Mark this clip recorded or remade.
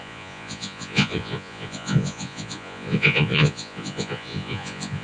remade